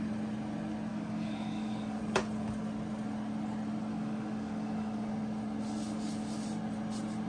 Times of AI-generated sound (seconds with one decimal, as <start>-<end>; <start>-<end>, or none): 0.9-2.0; 3.9-5.1